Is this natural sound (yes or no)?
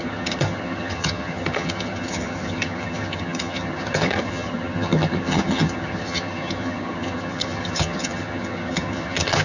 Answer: no